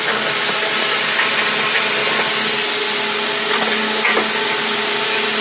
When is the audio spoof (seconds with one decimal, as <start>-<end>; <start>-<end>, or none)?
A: none